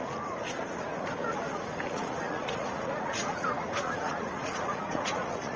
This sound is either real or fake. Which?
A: fake